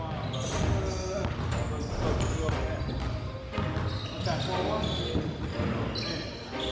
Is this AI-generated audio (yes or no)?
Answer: no